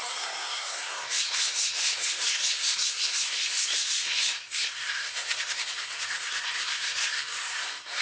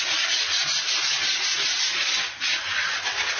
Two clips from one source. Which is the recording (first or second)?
second